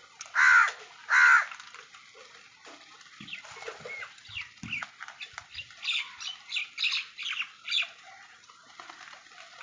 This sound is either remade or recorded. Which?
recorded